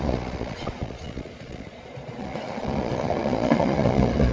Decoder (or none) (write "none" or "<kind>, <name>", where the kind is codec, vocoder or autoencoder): vocoder, Vocos